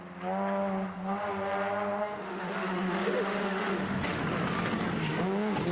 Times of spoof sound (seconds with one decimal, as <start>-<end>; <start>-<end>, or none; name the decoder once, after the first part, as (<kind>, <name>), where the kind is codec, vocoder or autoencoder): 2.0-4.2 (autoencoder, DAC-VAE)